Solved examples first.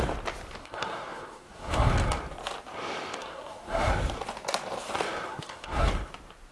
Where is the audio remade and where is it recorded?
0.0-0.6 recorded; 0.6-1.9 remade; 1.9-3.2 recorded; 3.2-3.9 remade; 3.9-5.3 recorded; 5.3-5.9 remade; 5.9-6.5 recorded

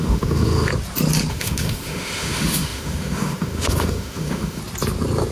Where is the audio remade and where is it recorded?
0.0-0.7 remade; 0.7-1.3 recorded; 1.3-4.6 remade; 4.6-5.3 recorded

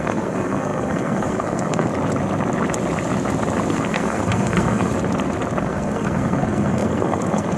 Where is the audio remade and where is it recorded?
0.0-1.9 remade; 1.9-3.7 recorded; 3.7-4.9 remade; 4.9-5.6 recorded; 5.6-7.6 remade

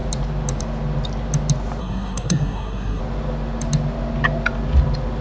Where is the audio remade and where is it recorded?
0.0-1.8 recorded; 1.8-3.0 remade; 3.0-5.2 recorded

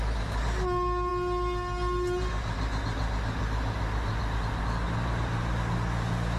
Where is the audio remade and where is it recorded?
0.0-6.4 recorded

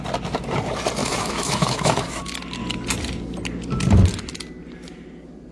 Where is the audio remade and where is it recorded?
0.0-1.0 recorded; 1.0-2.2 remade; 2.2-5.5 recorded

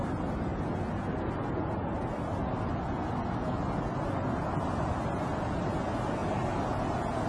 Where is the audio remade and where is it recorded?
0.0-7.3 recorded

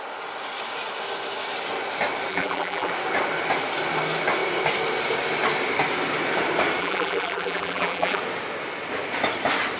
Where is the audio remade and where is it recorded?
0.0-2.3 recorded; 2.3-2.9 remade; 2.9-6.8 recorded; 6.8-8.2 remade; 8.2-9.8 recorded